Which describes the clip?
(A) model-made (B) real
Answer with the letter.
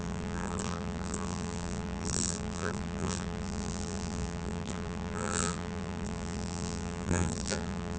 A